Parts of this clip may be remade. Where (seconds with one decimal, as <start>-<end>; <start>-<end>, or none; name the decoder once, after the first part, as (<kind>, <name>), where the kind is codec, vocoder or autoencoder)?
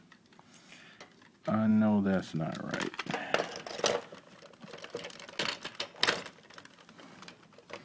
none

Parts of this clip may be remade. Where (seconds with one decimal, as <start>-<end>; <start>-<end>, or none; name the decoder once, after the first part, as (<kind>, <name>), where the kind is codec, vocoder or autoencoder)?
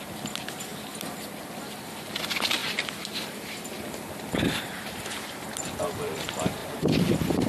0.7-1.4 (vocoder, BigVGAN v2); 2.6-5.5; 6.6-7.5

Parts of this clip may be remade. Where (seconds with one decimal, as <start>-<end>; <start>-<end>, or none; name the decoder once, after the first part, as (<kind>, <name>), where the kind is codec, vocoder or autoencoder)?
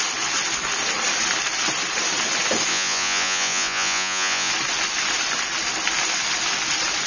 2.7-4.5 (vocoder, Vocos)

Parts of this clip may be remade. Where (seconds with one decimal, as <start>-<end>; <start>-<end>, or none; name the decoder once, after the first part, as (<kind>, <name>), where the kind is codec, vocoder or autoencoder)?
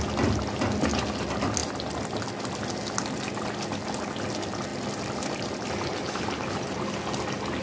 none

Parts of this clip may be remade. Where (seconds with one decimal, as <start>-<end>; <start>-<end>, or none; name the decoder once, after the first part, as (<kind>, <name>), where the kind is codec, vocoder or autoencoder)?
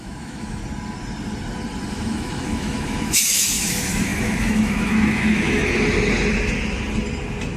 0.0-0.6 (autoencoder, DAC-VAE); 1.9-5.6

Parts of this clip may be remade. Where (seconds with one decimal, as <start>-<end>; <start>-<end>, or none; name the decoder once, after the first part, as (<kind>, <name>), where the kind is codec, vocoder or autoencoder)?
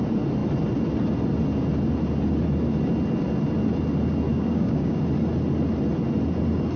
4.3-5.0 (codec, DAC)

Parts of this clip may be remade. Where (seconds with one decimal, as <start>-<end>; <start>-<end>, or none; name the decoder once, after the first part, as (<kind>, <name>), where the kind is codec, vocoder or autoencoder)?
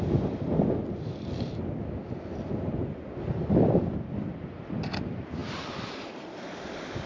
none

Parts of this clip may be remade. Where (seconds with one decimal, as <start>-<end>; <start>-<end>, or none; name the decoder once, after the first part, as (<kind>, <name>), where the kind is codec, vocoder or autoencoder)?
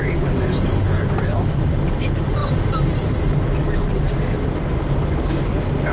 none